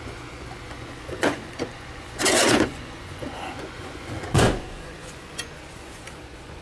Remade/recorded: remade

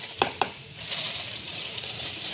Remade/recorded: remade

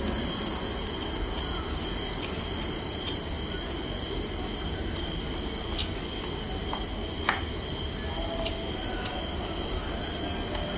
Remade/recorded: recorded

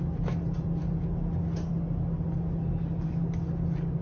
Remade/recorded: recorded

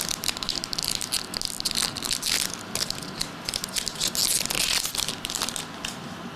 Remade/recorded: recorded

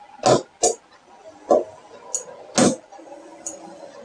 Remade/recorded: recorded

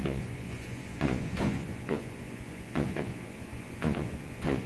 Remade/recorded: remade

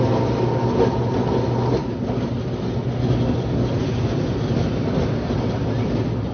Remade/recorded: recorded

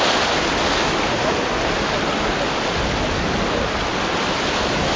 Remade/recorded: recorded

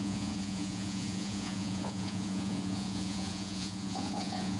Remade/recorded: remade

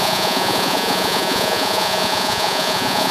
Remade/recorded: remade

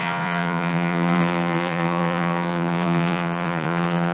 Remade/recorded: remade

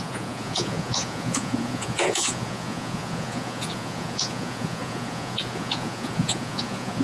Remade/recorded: remade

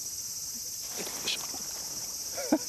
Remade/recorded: recorded